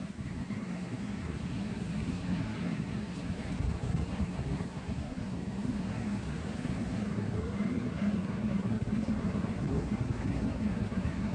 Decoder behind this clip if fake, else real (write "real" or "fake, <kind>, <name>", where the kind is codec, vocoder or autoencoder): fake, codec, SNAC